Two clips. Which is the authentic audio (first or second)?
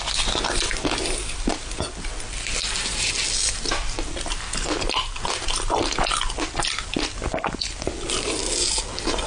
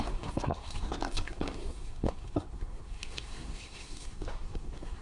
first